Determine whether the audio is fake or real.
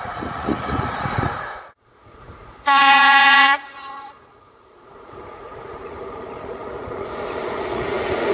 fake